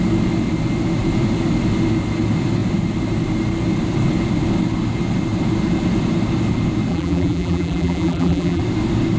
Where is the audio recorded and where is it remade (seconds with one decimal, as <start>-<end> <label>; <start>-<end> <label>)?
0.0-6.9 recorded; 6.9-8.6 remade; 8.6-9.2 recorded